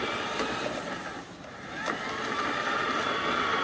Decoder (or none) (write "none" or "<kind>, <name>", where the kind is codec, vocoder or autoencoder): none